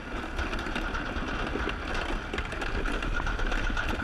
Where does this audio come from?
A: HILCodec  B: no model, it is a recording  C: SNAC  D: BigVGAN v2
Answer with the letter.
B